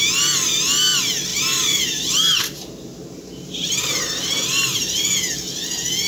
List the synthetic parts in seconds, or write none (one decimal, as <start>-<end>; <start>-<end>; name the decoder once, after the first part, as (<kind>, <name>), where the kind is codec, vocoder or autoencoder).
1.3-5.0 (vocoder, BigVGAN v2)